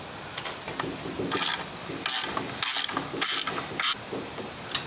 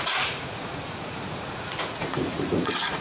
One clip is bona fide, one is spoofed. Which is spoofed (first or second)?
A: second